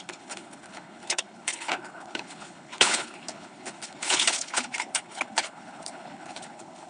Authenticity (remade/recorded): remade